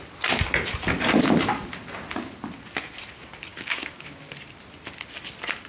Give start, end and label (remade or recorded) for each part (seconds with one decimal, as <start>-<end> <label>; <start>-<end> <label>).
0.0-3.5 recorded; 3.5-4.2 remade; 4.2-5.7 recorded